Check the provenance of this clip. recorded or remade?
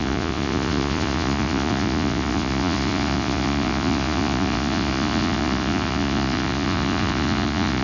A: remade